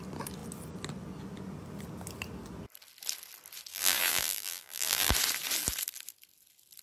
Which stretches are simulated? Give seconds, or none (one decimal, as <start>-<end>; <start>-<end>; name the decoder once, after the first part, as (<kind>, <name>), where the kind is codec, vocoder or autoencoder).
3.7-5.1 (vocoder, BigVGAN v2)